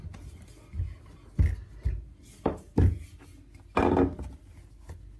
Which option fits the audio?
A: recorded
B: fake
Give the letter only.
A